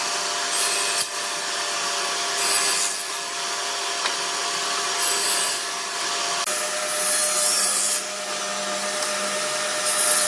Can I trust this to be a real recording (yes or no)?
yes